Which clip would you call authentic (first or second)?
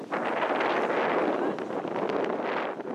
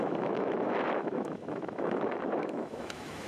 first